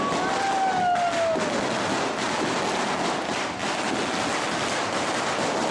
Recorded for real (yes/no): yes